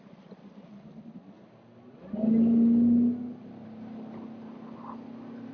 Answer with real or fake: real